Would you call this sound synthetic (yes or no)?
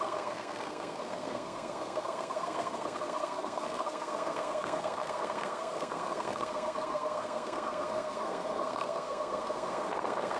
yes